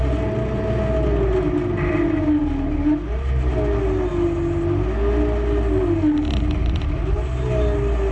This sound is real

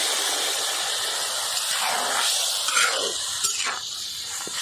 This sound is real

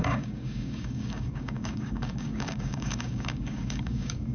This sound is fake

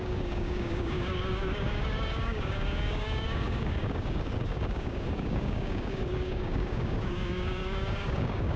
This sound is fake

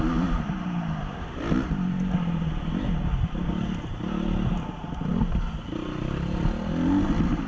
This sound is real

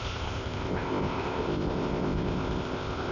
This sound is fake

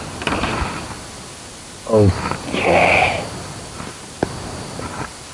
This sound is real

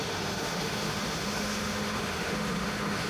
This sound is fake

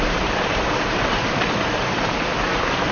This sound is fake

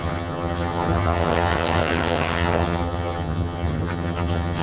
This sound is fake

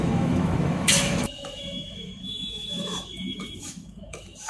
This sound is fake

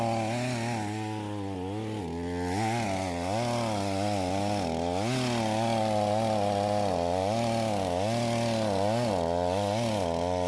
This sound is real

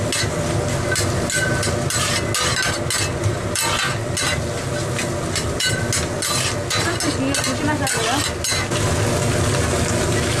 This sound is real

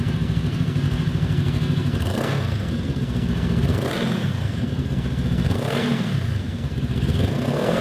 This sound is fake